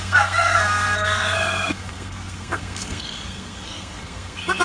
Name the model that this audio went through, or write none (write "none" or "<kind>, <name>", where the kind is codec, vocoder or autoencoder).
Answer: codec, SNAC